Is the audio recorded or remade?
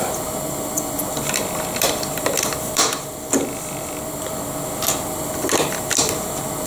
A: remade